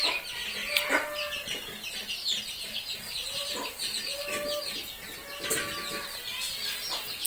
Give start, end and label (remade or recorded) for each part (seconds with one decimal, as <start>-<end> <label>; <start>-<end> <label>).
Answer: 0.0-0.6 recorded; 0.6-4.6 remade; 4.6-7.3 recorded